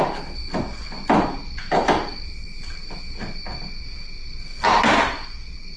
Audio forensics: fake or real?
real